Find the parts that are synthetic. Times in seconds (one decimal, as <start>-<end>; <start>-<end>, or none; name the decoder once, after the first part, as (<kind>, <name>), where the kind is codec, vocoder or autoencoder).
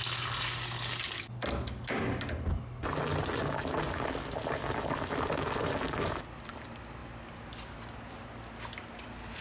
none